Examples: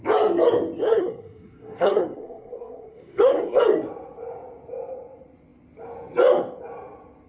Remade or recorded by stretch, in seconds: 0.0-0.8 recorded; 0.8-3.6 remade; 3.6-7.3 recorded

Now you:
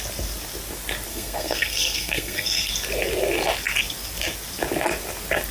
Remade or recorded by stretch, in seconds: 0.0-1.1 recorded; 1.1-2.7 remade; 2.7-5.5 recorded

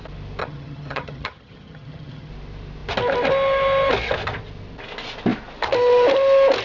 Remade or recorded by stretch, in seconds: 0.0-0.4 recorded; 0.4-2.3 remade; 2.3-6.6 recorded